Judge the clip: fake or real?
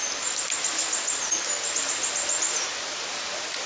real